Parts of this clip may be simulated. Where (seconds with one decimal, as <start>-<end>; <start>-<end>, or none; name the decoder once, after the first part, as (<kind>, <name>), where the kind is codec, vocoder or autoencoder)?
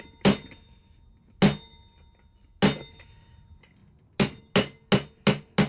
none